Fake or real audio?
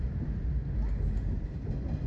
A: real